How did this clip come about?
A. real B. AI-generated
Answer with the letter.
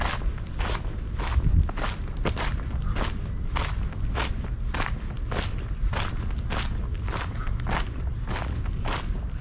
A